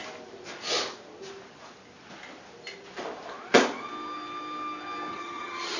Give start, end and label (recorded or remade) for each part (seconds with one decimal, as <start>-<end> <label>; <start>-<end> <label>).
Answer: 0.0-5.1 recorded; 5.1-5.8 remade